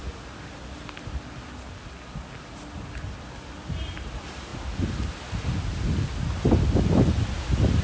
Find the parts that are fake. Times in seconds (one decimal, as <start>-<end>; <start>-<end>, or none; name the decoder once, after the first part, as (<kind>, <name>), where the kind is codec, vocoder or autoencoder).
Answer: none